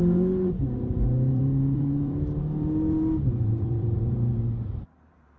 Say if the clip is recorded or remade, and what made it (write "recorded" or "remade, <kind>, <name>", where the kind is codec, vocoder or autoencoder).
remade, vocoder, BigVGAN v2